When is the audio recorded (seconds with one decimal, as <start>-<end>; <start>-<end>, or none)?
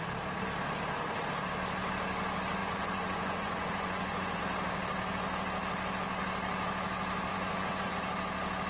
0.0-2.6; 4.4-7.3; 7.9-8.7